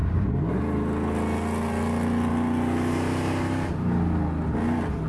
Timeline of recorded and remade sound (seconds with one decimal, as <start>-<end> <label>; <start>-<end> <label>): 0.0-0.6 remade; 0.6-5.1 recorded